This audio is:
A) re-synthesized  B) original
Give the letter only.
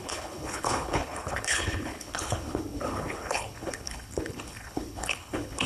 A